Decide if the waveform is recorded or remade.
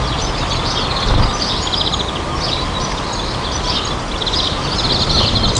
recorded